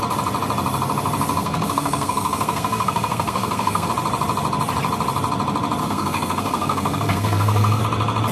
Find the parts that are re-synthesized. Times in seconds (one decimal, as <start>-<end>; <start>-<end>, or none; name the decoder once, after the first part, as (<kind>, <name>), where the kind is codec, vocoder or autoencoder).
1.4-3.9 (codec, SNAC); 5.8-7.8